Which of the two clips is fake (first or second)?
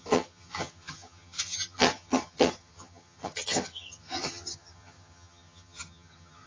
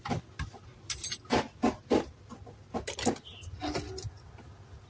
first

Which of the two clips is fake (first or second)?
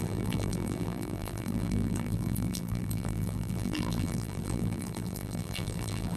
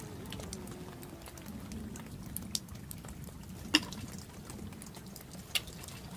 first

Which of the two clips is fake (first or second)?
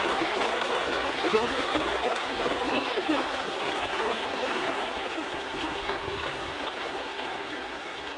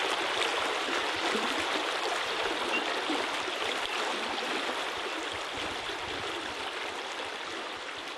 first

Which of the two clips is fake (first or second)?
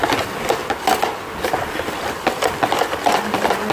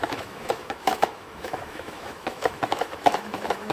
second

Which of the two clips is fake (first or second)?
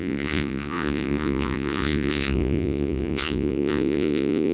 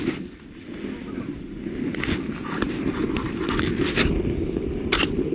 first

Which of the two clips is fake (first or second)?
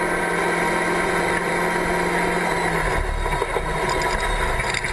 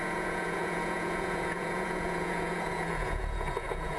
second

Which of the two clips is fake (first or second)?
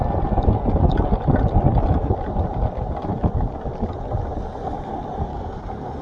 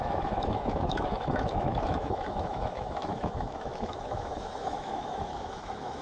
second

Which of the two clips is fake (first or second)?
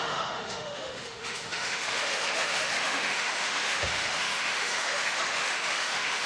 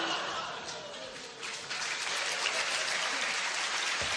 first